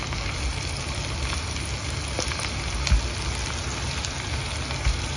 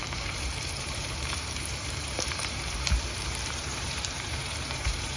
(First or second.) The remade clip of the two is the second